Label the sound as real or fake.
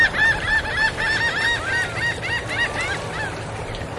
real